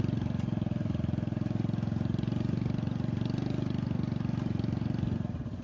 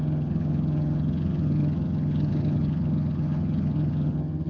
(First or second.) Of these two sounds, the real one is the first